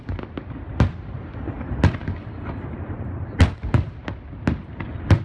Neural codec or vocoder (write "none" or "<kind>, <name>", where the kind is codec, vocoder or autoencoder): none